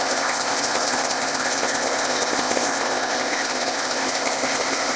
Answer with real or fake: fake